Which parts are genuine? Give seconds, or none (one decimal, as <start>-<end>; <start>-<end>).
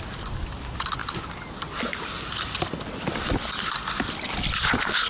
0.0-5.1